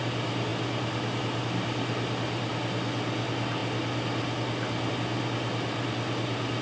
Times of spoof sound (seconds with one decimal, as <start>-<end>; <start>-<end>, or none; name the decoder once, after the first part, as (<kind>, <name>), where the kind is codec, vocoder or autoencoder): none